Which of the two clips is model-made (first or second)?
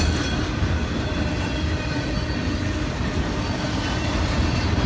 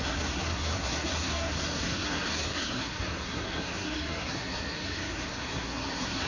second